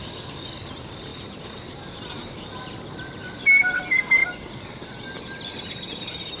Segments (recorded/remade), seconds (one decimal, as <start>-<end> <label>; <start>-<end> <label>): 0.0-1.1 recorded; 1.1-2.3 remade; 2.3-6.4 recorded